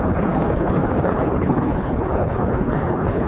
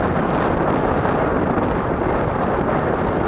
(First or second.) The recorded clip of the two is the second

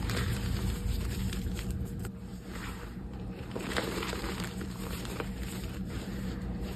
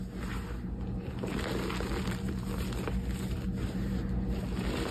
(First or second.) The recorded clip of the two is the second